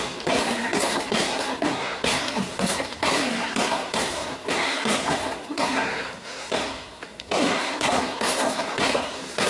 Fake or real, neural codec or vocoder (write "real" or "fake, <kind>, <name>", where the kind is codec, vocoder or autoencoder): fake, codec, SNAC